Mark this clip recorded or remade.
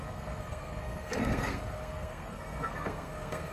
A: remade